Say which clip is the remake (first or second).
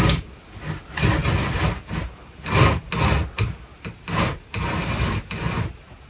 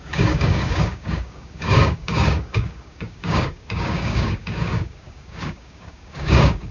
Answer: second